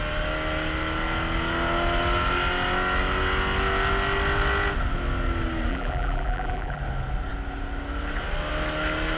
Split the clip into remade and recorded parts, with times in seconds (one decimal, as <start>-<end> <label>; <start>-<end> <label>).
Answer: 0.0-5.7 recorded; 5.7-6.8 remade; 6.8-9.2 recorded

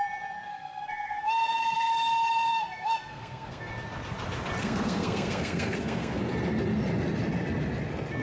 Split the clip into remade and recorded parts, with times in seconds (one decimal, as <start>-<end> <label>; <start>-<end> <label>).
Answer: 0.0-0.5 recorded; 0.5-1.9 remade; 1.9-2.5 recorded; 2.5-3.7 remade; 3.7-4.6 recorded; 4.6-6.2 remade; 6.2-8.2 recorded

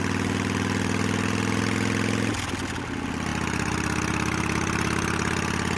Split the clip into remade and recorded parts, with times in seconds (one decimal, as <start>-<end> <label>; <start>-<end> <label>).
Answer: 0.0-5.8 recorded

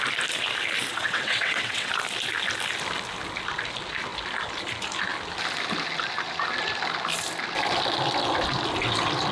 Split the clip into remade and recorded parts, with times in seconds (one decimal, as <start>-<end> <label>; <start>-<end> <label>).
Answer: 0.0-0.9 recorded; 0.9-1.9 remade; 1.9-9.3 recorded

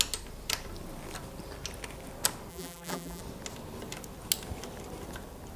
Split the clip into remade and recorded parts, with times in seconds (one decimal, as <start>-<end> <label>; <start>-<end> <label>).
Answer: 0.0-2.5 recorded; 2.5-3.2 remade; 3.2-5.6 recorded

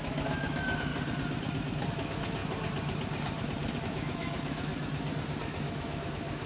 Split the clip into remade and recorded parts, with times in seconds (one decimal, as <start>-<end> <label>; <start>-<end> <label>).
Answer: 0.0-0.9 remade; 0.9-1.9 recorded; 1.9-2.4 remade; 2.4-3.8 recorded; 3.8-4.7 remade; 4.7-5.4 recorded; 5.4-6.5 remade

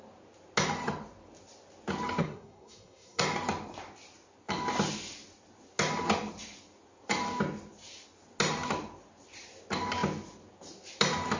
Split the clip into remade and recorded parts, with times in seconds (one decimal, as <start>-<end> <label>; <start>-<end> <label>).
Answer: 0.0-2.2 recorded; 2.2-3.2 remade; 3.2-11.4 recorded